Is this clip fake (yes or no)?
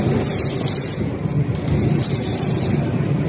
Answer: no